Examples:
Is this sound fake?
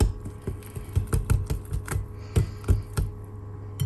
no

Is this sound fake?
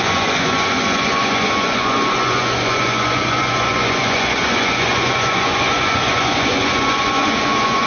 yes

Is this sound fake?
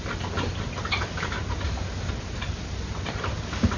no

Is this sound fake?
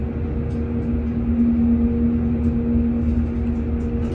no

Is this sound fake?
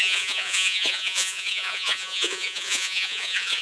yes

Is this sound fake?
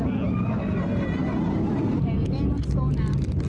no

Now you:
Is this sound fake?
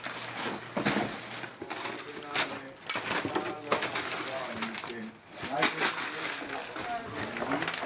no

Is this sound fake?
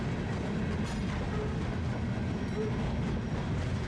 no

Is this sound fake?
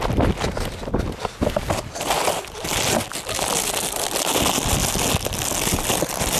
no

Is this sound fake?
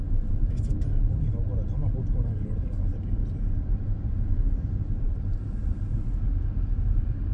yes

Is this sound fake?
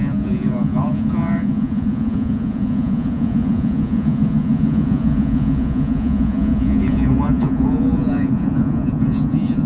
yes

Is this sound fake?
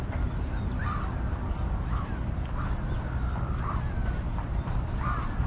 yes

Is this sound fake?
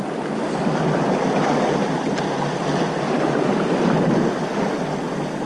no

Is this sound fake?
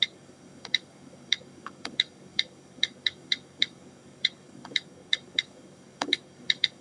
yes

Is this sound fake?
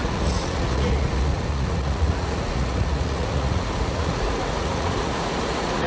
yes